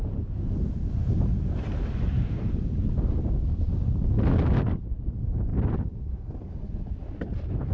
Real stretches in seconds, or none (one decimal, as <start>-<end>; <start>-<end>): 2.8-4.3; 7.0-7.7